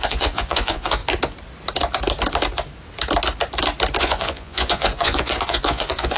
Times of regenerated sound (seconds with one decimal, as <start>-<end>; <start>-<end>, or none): 0.0-1.0; 4.0-6.2